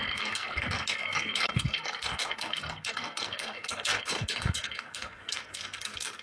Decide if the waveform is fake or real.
fake